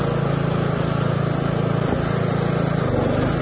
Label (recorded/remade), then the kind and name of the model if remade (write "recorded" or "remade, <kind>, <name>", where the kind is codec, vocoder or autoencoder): recorded